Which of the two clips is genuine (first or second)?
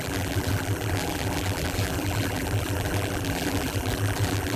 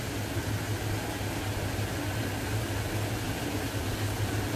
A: second